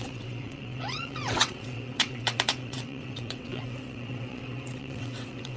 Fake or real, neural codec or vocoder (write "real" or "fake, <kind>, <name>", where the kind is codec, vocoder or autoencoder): fake, vocoder, WaveNeXt